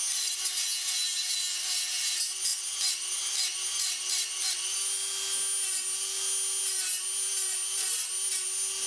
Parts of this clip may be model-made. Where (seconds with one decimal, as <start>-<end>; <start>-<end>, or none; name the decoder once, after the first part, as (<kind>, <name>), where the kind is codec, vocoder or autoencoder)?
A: none